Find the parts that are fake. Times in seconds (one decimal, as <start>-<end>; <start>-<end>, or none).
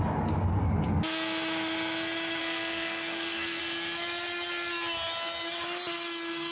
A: 2.4-3.6